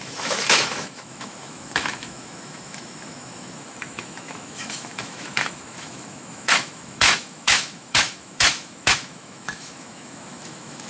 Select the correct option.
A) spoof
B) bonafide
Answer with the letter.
A